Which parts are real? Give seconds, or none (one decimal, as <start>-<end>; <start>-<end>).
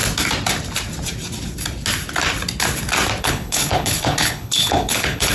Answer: 0.0-3.2